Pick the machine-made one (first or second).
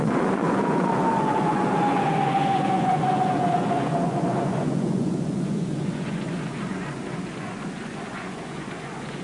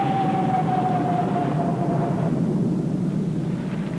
first